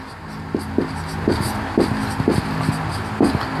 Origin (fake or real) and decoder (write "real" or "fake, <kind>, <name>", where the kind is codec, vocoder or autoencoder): real